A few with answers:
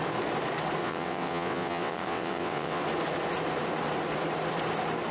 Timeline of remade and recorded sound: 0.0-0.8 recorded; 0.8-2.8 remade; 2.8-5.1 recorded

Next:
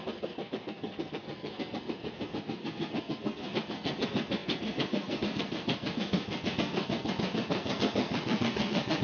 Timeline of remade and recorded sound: 0.0-9.0 remade

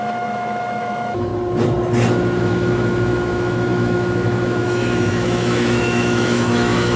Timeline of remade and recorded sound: 0.0-1.3 remade; 1.3-2.4 recorded; 2.4-7.0 remade

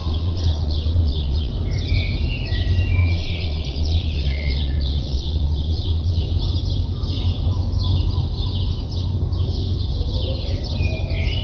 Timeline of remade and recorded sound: 0.0-1.5 remade; 1.5-3.0 recorded; 3.0-6.2 remade; 6.2-11.4 recorded

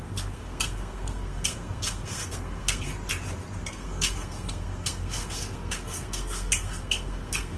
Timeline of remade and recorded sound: 0.0-2.9 remade; 2.9-3.7 recorded; 3.7-7.6 remade